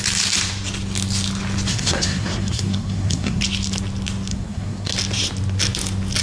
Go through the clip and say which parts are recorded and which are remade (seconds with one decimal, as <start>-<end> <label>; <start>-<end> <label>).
0.0-1.7 recorded; 1.7-3.4 remade; 3.4-4.3 recorded; 4.3-4.9 remade; 4.9-6.2 recorded